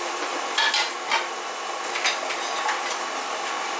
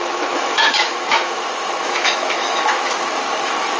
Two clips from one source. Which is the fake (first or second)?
second